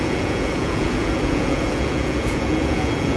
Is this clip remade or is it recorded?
remade